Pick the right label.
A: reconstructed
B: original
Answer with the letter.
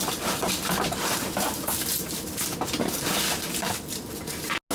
B